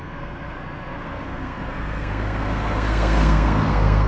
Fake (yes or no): yes